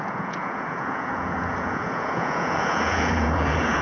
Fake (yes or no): yes